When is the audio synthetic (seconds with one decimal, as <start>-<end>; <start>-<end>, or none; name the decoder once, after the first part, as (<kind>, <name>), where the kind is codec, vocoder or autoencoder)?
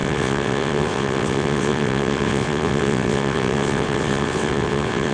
0.0-5.1 (vocoder, WaveNeXt)